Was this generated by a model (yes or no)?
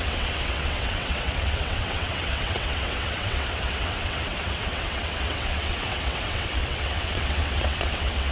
yes